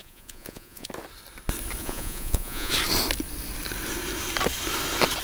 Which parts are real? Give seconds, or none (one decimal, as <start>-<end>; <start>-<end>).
0.9-1.8; 2.7-5.2